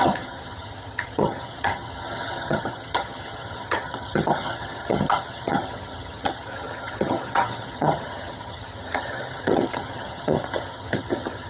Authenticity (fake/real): fake